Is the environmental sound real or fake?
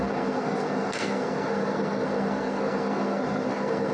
fake